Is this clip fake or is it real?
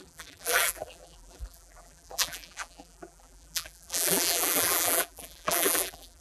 fake